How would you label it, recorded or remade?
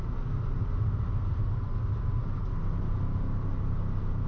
recorded